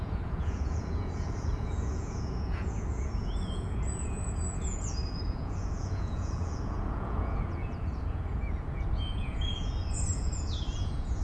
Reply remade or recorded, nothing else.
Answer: remade